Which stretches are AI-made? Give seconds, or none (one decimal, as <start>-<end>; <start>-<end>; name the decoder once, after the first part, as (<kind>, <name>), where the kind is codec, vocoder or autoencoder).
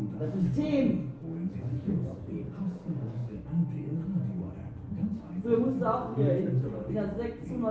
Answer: none